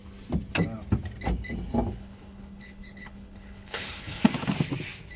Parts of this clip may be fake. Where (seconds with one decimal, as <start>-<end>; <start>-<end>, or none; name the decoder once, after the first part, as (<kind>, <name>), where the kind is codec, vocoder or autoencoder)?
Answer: 2.0-4.2 (codec, HILCodec)